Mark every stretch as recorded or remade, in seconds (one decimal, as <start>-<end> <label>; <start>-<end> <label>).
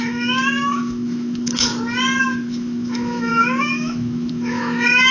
0.0-1.7 remade; 1.7-2.2 recorded; 2.2-5.1 remade